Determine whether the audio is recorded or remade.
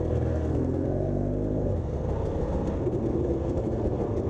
remade